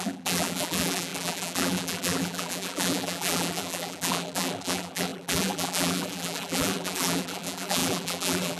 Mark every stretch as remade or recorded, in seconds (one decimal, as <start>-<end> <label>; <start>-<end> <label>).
0.0-8.6 remade